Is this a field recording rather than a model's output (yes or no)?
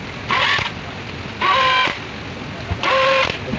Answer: yes